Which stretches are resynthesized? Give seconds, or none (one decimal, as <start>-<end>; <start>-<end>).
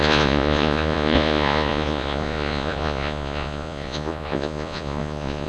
0.0-5.5